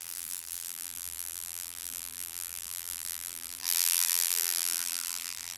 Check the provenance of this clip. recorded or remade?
remade